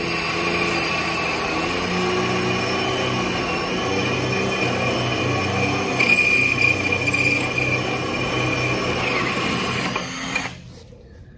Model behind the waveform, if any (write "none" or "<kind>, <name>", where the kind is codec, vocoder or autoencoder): none